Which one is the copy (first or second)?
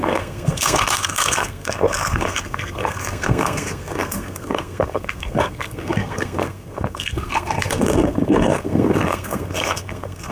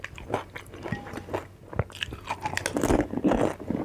first